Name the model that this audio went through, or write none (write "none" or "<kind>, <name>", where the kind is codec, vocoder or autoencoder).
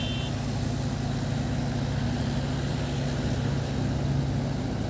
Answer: none